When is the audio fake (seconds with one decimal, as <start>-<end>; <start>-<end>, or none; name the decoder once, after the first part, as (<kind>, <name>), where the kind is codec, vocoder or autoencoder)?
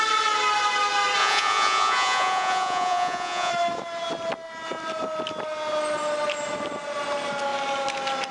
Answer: 1.2-3.5 (vocoder, Vocos)